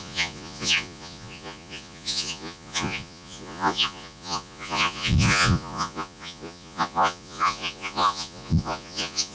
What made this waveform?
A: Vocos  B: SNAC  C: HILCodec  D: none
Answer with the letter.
A